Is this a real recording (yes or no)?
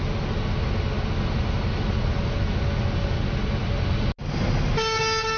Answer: yes